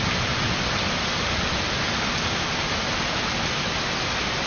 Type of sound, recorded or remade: recorded